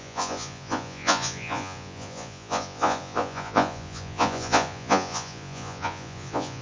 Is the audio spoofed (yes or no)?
yes